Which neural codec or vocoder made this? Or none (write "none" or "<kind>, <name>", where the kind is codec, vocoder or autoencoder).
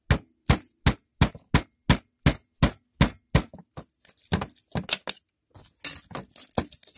none